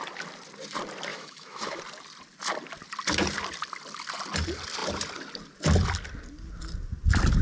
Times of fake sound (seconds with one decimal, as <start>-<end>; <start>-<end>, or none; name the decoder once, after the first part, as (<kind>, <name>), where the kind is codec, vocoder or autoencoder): 1.1-1.8 (autoencoder, DAC-VAE)